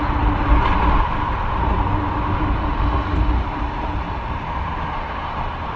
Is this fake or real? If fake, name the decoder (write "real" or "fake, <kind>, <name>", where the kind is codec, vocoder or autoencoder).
real